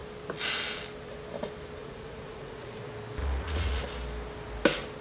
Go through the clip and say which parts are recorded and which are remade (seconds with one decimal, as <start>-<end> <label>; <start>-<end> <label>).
0.0-1.8 recorded; 1.8-2.8 remade; 2.8-3.2 recorded; 3.2-3.8 remade; 3.8-5.0 recorded